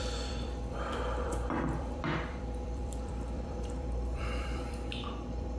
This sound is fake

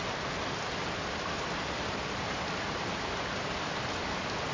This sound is real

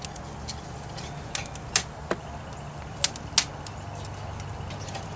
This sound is real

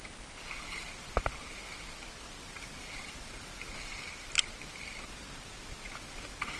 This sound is real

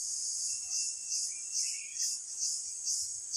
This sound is real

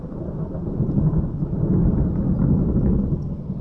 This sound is real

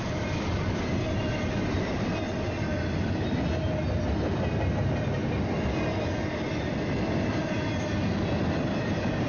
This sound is real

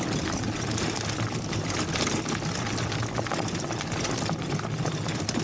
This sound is real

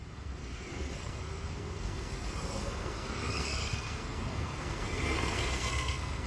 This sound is fake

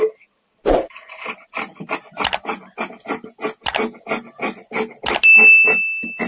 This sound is real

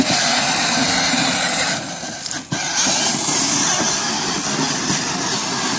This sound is real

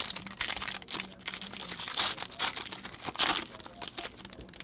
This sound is real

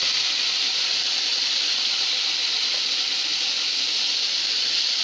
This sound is real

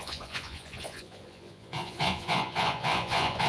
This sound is fake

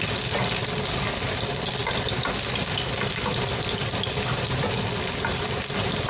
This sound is real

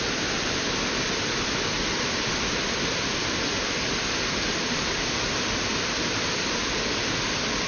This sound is fake